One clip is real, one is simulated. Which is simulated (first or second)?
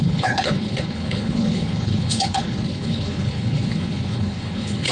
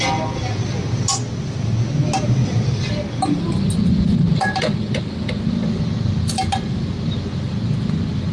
first